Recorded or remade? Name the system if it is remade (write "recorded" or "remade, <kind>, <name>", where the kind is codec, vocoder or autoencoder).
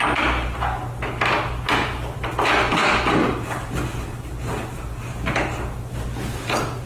recorded